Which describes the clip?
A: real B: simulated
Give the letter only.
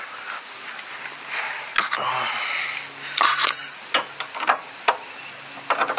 A